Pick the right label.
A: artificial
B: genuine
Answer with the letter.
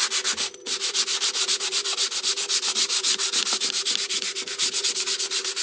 B